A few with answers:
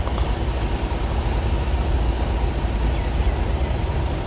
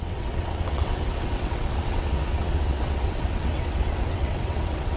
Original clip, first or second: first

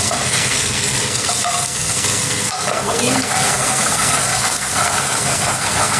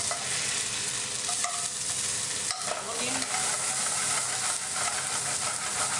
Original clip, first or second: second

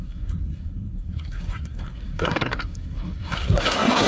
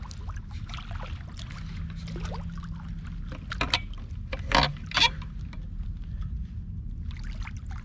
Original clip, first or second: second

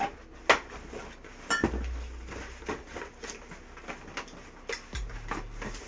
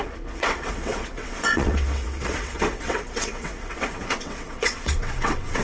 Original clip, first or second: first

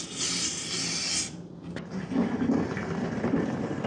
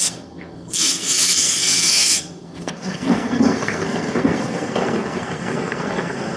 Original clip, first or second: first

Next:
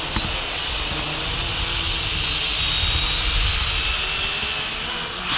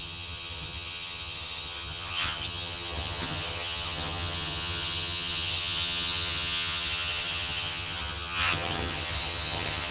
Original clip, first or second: first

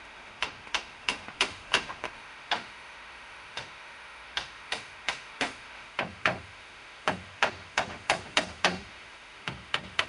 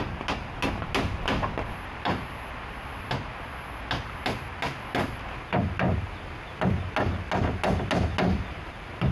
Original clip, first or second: second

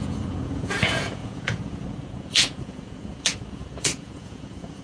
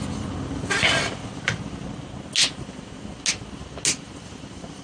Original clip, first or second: second